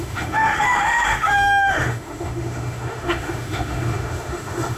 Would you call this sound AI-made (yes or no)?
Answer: yes